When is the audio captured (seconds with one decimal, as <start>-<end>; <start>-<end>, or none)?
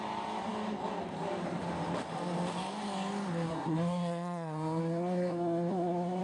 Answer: 0.0-3.5